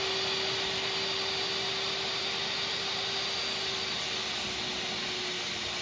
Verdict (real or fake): real